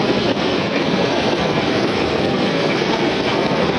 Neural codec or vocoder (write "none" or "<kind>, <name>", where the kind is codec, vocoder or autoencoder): codec, SNAC